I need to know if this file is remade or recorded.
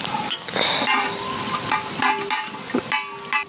recorded